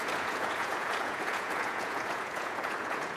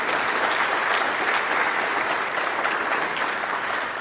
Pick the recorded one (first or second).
second